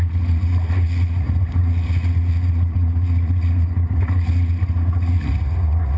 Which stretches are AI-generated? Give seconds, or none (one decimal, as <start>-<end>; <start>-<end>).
0.0-6.0